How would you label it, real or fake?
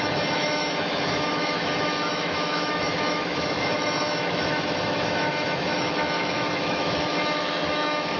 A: fake